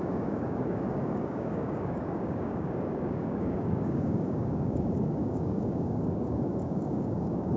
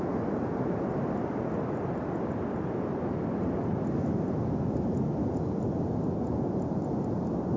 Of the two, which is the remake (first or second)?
first